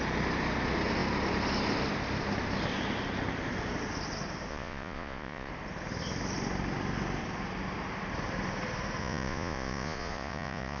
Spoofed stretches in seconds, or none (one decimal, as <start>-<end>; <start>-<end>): 4.5-5.5; 9.0-10.8